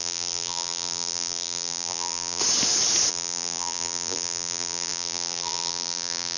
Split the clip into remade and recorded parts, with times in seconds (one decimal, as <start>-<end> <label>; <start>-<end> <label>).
0.0-2.4 remade; 2.4-3.1 recorded; 3.1-6.4 remade